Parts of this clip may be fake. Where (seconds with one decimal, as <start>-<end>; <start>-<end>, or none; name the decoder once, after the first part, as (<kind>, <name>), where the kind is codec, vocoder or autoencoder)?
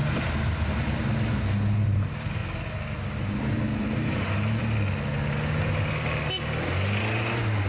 none